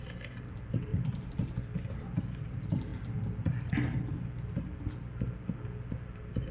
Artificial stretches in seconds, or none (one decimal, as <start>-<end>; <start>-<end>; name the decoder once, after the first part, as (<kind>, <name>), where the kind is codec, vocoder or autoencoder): 0.9-2.2 (vocoder, BigVGAN v2)